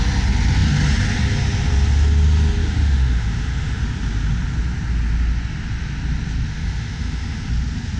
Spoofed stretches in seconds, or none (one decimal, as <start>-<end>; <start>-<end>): 2.6-3.8; 6.5-7.5